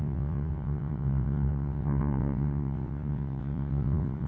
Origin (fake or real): fake